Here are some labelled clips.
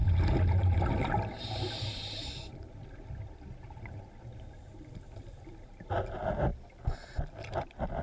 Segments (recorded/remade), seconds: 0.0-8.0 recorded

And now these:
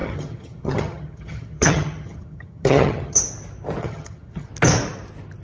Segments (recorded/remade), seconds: 0.0-3.2 remade; 3.2-3.8 recorded; 3.8-4.5 remade; 4.5-5.4 recorded

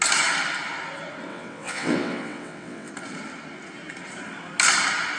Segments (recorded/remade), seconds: 0.0-1.3 recorded; 1.3-2.9 remade; 2.9-5.2 recorded

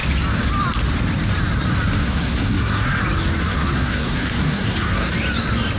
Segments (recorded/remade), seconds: 0.0-2.0 recorded; 2.0-3.0 remade; 3.0-3.4 recorded; 3.4-5.1 remade; 5.1-5.8 recorded

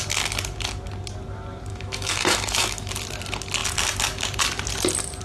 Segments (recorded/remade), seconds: 0.0-1.7 recorded; 1.7-2.9 remade; 2.9-5.2 recorded

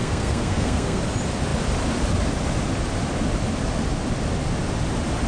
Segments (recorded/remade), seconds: 0.0-1.0 remade; 1.0-5.3 recorded

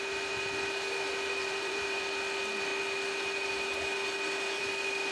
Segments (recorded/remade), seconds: 0.0-1.4 recorded; 1.4-2.0 remade; 2.0-5.1 recorded